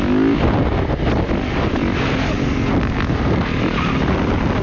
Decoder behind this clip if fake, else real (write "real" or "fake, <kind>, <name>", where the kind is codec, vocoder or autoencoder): real